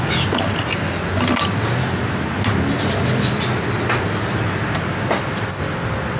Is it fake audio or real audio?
real